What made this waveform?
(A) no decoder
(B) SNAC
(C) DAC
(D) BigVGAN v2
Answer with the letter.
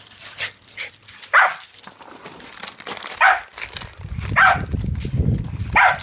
D